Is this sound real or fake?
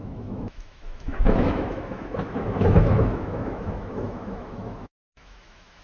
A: fake